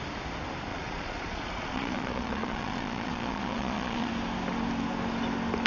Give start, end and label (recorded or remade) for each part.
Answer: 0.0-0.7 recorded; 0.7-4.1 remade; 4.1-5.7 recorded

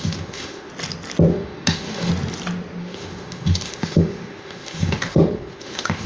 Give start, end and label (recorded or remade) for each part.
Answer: 0.0-0.7 remade; 0.7-1.3 recorded; 1.3-2.1 remade; 2.1-2.8 recorded; 2.8-6.1 remade